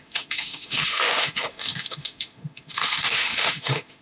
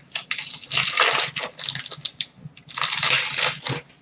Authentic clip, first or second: second